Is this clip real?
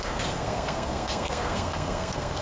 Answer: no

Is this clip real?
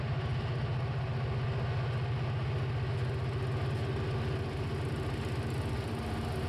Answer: yes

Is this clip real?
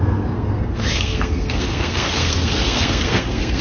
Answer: no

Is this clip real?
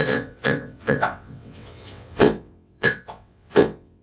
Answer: no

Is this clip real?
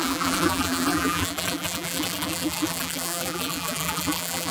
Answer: no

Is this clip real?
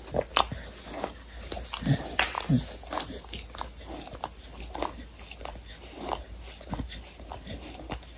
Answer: yes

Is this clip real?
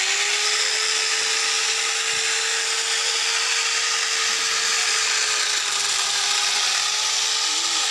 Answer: yes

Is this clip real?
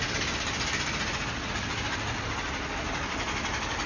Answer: yes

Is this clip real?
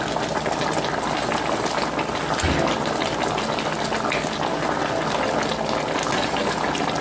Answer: yes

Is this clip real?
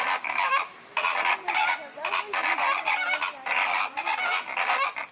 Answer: yes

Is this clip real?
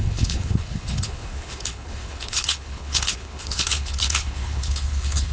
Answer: no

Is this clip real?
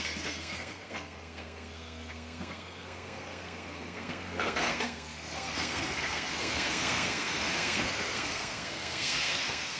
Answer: no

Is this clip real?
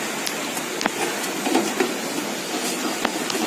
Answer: yes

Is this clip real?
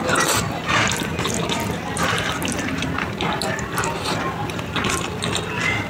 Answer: yes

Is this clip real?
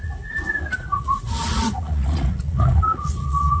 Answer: no